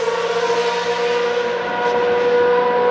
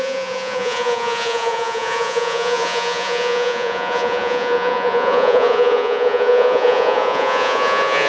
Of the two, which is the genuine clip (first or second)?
first